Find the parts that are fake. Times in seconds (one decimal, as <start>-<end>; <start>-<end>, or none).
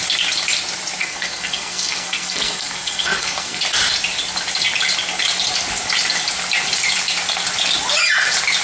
1.0-3.6